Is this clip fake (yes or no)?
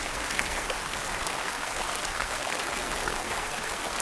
yes